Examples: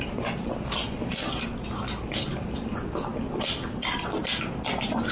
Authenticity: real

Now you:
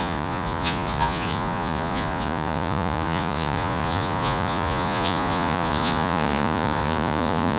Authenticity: fake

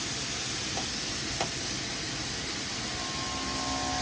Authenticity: real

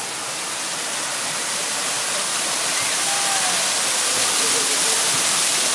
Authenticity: real